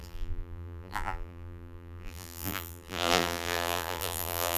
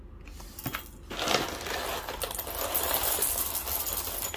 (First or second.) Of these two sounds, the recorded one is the second